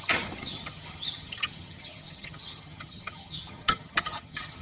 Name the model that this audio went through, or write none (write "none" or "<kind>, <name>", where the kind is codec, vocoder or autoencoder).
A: vocoder, HiFi-GAN